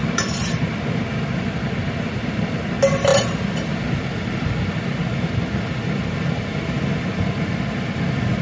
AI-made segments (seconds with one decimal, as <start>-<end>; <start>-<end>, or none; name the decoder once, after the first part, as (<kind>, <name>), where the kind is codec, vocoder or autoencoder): none